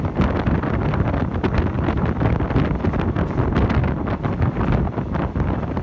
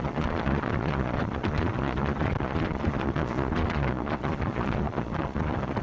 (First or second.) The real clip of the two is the first